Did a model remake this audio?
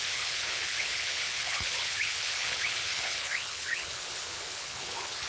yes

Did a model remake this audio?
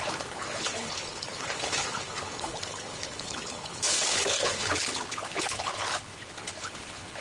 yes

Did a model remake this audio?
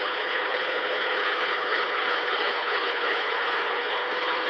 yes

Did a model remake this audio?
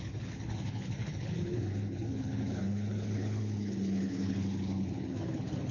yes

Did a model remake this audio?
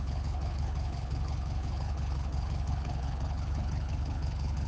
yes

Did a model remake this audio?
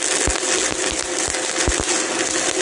no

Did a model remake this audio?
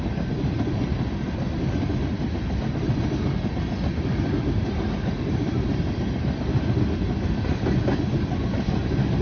no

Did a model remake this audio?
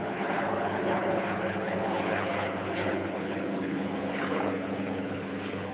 yes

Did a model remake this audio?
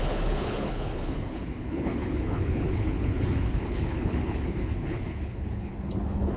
yes